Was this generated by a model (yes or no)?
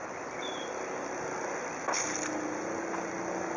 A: no